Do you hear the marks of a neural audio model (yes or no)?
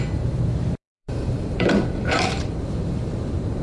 yes